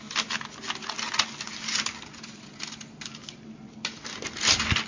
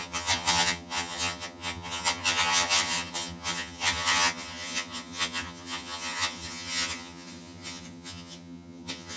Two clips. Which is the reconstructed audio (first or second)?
second